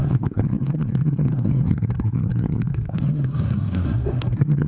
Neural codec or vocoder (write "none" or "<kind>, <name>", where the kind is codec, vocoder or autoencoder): codec, SNAC